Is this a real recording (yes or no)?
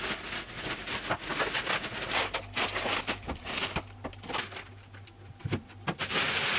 yes